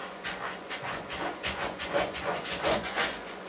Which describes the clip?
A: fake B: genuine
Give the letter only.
A